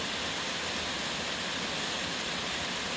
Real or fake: real